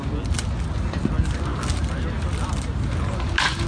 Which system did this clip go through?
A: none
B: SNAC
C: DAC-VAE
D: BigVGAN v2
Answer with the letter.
A